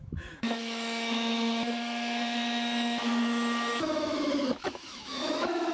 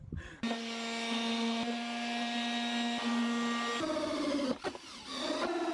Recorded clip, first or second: second